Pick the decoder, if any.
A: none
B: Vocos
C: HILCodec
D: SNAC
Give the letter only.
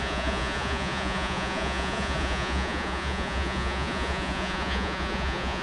B